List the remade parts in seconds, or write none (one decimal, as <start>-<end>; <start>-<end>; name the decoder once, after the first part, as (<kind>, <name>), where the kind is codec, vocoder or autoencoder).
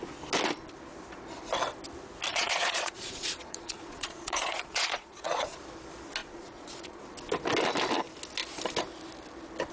2.3-5.6 (vocoder, Vocos); 6.2-7.0